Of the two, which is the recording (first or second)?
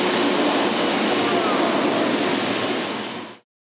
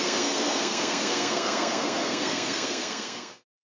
first